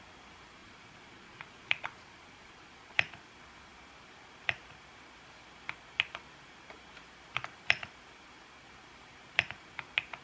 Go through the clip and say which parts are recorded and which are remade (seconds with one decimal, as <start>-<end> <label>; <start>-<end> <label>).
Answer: 0.0-0.6 recorded; 0.6-3.1 remade; 3.1-10.2 recorded